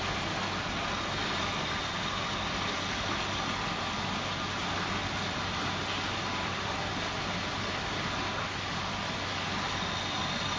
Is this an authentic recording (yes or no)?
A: yes